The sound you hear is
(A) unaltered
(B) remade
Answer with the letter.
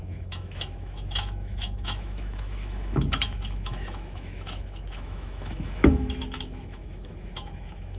B